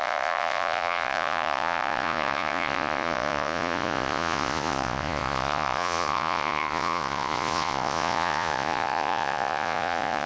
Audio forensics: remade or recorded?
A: remade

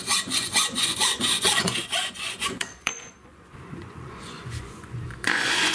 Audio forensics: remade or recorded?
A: remade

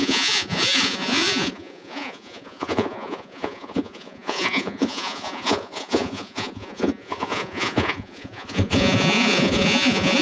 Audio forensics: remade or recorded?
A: remade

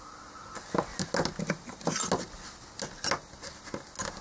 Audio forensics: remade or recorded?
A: recorded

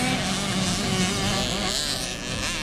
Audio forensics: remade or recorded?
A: recorded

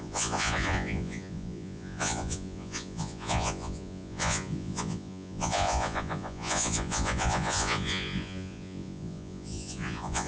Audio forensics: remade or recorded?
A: remade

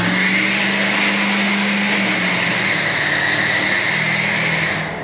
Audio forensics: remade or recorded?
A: recorded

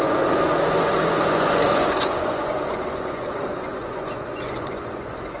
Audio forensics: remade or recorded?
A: remade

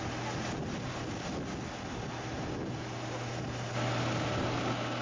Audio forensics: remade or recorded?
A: recorded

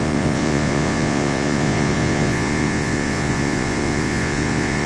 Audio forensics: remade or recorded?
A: remade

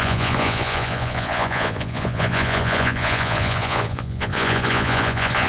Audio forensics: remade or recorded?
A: remade